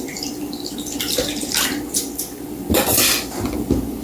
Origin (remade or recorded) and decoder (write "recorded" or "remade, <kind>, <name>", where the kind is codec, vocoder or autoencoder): remade, vocoder, BigVGAN v2